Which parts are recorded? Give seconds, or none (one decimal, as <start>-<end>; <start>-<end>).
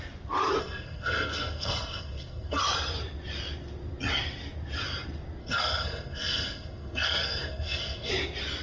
0.0-0.6; 2.6-5.4; 8.1-8.6